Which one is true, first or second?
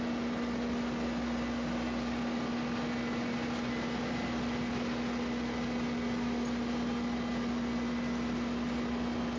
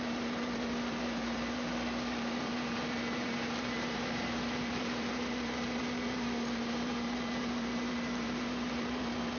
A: first